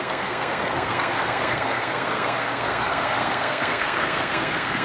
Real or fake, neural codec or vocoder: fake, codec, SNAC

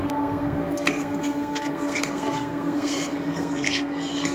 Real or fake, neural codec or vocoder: fake, codec, SNAC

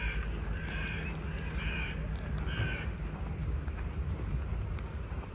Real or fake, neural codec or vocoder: real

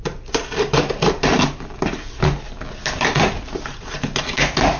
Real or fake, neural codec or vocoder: real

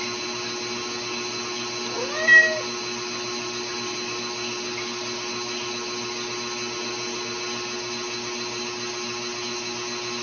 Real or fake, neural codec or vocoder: real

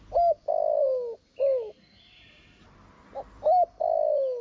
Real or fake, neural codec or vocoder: real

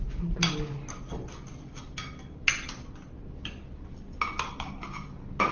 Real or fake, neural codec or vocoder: real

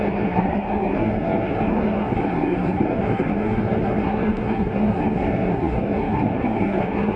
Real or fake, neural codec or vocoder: fake, codec, SNAC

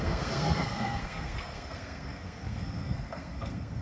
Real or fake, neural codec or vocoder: fake, codec, SNAC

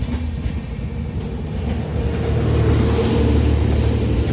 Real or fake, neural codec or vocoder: real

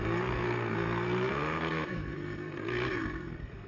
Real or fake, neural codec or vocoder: fake, codec, SNAC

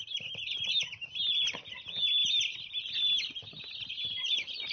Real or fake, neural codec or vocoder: real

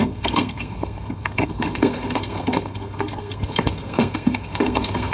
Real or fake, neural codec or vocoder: fake, codec, SNAC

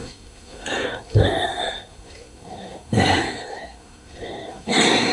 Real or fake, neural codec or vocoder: fake, codec, SNAC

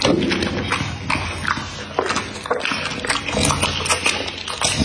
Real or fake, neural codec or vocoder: real